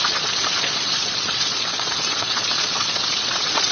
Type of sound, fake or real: fake